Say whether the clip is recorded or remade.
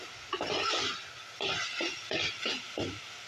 recorded